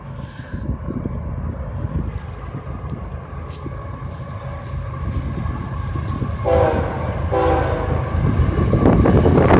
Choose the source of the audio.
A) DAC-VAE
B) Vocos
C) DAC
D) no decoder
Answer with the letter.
D